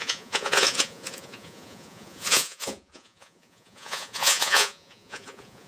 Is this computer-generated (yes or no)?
yes